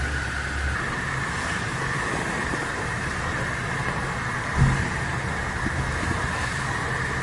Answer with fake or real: real